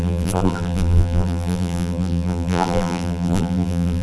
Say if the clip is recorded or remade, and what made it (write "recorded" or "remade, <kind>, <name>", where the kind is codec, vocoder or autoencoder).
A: remade, vocoder, BigVGAN v2